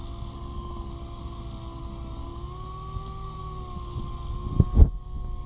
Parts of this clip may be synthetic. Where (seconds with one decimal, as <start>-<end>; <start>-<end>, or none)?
none